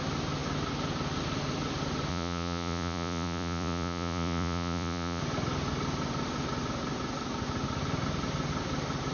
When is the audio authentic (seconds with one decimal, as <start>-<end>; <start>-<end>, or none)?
0.0-2.1; 5.2-9.1